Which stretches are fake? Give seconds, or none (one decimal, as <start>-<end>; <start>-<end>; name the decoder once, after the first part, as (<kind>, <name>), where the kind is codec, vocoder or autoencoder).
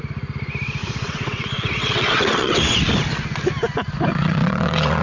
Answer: 0.8-2.8 (vocoder, WaveNeXt); 4.1-5.0